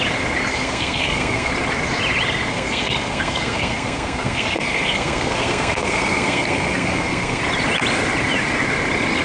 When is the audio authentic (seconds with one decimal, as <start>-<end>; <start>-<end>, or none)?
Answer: 0.0-0.5; 1.5-2.5; 7.4-9.2